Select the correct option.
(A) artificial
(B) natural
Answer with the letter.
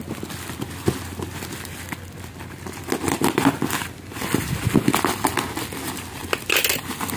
B